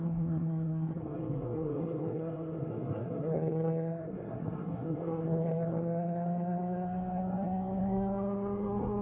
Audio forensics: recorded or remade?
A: remade